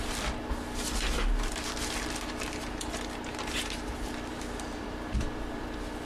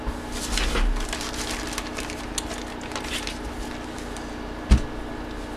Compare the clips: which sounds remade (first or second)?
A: first